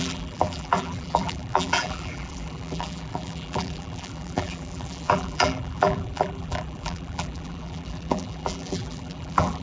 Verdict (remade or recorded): remade